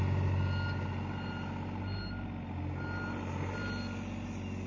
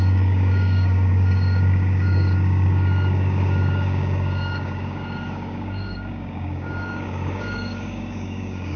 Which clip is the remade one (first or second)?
second